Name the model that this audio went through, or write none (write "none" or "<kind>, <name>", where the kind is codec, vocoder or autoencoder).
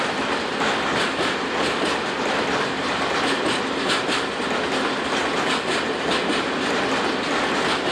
none